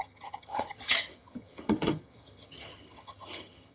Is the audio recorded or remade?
remade